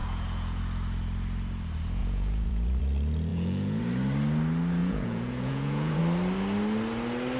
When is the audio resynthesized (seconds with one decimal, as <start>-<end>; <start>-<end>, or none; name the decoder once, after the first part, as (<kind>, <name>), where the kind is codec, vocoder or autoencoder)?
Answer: 0.0-0.6 (vocoder, Vocos); 2.0-2.8; 3.3-3.8; 4.8-6.0